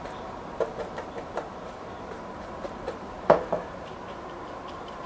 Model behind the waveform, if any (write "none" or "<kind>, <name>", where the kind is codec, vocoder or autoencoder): vocoder, BigVGAN v2